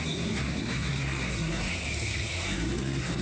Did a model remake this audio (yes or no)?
yes